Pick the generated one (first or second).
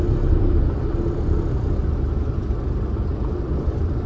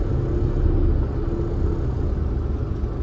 first